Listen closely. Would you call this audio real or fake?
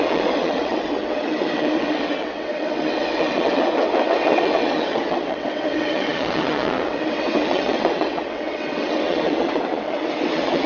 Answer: fake